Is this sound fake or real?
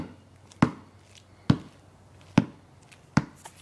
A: real